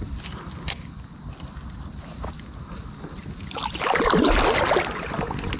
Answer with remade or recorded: recorded